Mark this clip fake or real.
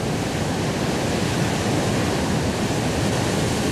real